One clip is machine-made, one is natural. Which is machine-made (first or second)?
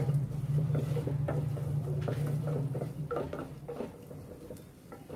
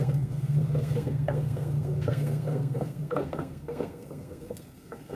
second